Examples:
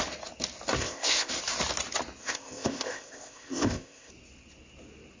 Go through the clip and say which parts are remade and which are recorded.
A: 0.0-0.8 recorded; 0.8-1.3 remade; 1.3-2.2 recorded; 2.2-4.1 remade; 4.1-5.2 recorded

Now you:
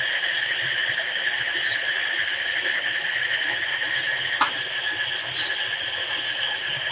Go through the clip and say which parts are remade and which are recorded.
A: 0.0-6.9 recorded

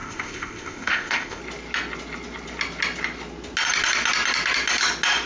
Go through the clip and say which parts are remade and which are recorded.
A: 0.0-1.4 remade; 1.4-5.3 recorded

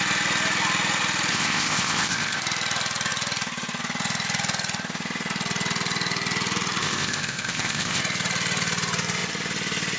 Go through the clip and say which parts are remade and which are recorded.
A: 0.0-1.3 recorded; 1.3-2.4 remade; 2.4-6.8 recorded; 6.8-8.0 remade; 8.0-10.0 recorded

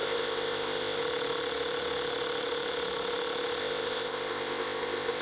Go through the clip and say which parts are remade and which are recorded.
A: 0.0-1.0 remade; 1.0-3.6 recorded; 3.6-5.2 remade

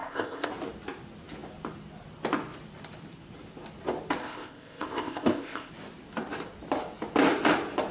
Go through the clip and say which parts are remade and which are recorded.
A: 0.0-0.5 remade; 0.5-4.2 recorded; 4.2-5.7 remade; 5.7-7.9 recorded